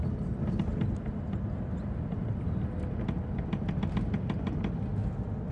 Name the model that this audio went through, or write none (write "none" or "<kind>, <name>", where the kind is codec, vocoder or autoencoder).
none